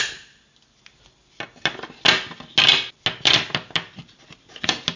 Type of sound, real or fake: real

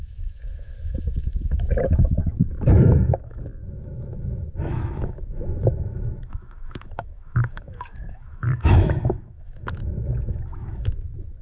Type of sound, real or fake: fake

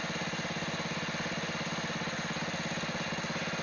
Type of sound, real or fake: real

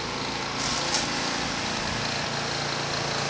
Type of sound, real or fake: real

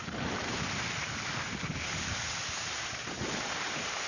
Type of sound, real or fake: fake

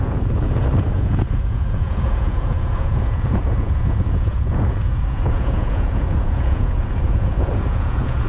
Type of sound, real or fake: fake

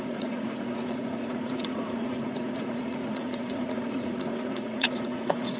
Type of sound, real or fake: fake